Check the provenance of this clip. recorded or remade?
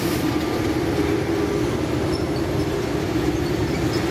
recorded